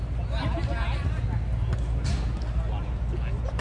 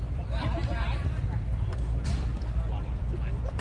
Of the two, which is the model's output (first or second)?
second